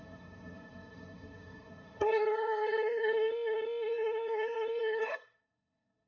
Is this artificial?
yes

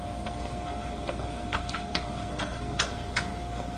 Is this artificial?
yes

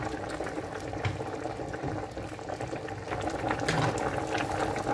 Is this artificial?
no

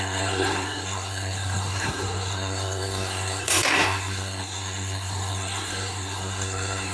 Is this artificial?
yes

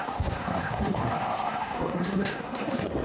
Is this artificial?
yes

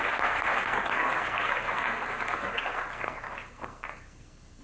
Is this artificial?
yes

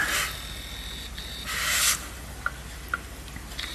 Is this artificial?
no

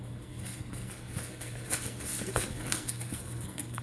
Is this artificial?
yes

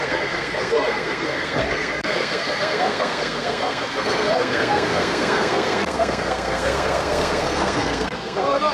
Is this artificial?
yes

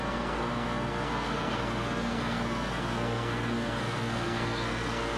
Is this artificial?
yes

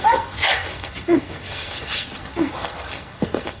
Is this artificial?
yes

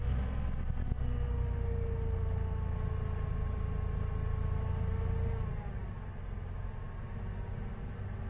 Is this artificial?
no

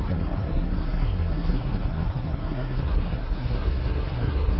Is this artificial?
yes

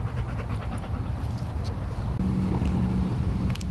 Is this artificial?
no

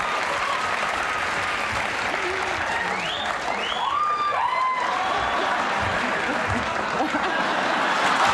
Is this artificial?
no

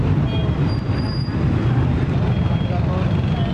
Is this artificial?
no